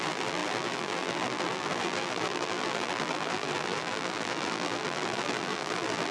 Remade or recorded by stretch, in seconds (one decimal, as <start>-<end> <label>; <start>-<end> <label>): 0.0-6.1 remade